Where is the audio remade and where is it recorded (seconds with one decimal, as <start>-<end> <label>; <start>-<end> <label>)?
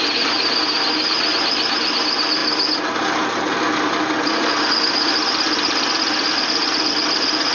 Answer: 0.0-7.5 recorded